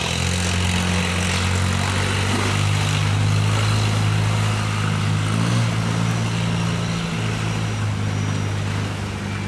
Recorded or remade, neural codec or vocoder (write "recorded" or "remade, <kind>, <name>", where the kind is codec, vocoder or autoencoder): recorded